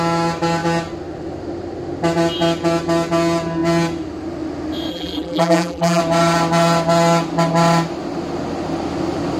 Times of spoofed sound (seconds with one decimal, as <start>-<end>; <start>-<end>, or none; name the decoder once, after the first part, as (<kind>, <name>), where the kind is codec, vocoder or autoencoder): 4.9-6.0 (vocoder, BigVGAN v2)

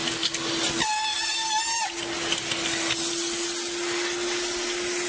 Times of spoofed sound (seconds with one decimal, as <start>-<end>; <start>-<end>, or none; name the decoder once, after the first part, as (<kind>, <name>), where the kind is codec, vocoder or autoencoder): none

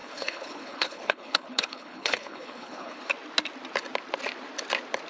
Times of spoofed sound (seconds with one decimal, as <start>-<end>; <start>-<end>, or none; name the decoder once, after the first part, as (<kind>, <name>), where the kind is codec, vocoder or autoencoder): 0.0-3.1 (codec, HILCodec)